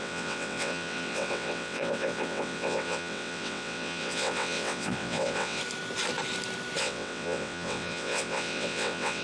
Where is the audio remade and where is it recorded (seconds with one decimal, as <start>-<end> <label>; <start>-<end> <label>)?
0.0-5.6 remade; 5.6-6.8 recorded; 6.8-9.2 remade

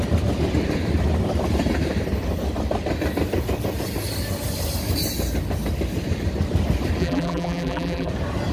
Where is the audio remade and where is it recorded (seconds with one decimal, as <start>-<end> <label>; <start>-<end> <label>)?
0.0-7.0 recorded; 7.0-8.1 remade; 8.1-8.5 recorded